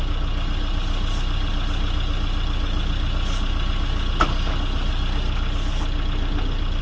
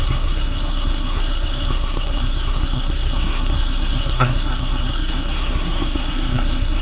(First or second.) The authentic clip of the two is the first